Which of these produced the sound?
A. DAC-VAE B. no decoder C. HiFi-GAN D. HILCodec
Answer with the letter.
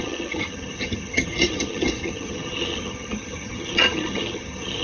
C